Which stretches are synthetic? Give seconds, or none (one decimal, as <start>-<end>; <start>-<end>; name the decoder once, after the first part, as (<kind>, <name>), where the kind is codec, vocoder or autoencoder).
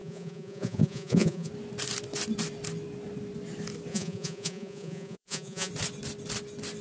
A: 0.0-1.5 (vocoder, Vocos); 3.9-5.7